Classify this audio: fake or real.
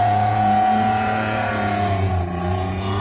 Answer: fake